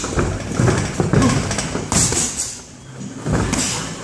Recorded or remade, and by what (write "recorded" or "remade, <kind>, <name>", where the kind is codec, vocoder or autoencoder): recorded